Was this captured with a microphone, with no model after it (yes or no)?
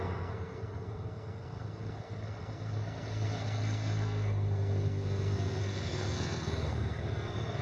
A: no